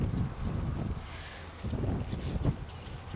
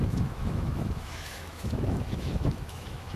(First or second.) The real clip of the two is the first